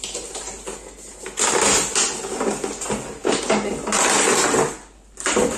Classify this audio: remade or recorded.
recorded